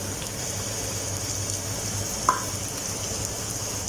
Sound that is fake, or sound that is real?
real